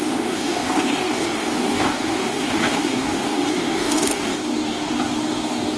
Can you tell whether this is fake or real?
fake